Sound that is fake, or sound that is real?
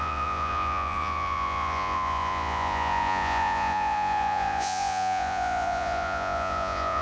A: fake